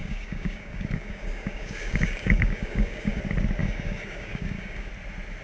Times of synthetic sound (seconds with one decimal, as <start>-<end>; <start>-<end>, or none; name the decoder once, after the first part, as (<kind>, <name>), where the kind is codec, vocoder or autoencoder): 0.0-3.2 (codec, DAC); 3.6-4.9